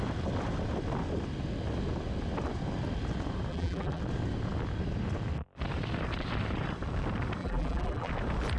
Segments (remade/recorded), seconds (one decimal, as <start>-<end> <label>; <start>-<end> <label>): 0.0-3.5 recorded; 3.5-4.0 remade; 4.0-7.4 recorded; 7.4-8.1 remade; 8.1-8.6 recorded